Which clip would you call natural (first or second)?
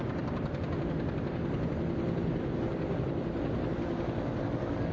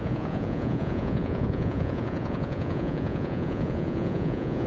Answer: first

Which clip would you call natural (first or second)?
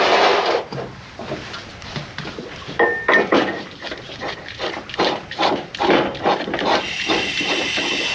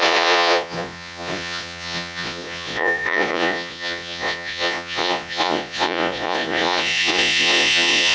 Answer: first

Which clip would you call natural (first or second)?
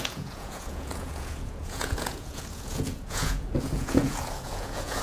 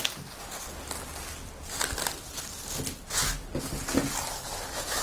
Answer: second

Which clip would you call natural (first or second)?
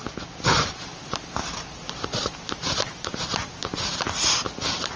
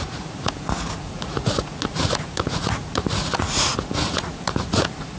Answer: first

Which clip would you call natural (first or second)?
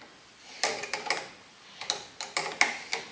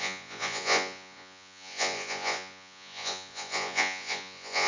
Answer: first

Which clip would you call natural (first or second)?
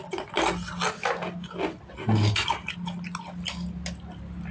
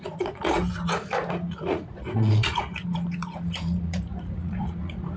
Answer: first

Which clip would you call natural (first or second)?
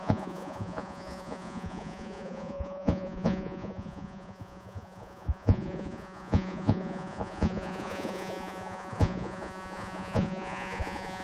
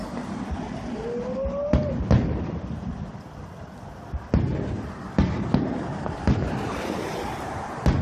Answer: second